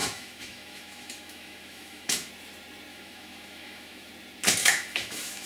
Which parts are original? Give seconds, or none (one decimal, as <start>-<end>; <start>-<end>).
2.3-2.9; 4.1-4.6